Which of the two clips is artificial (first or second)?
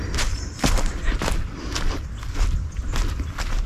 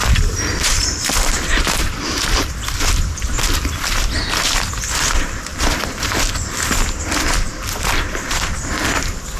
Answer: second